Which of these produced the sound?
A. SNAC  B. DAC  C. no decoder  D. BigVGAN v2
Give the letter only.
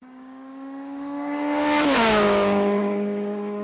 B